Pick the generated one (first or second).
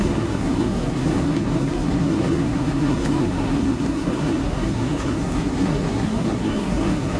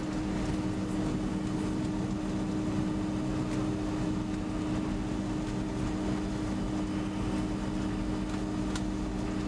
first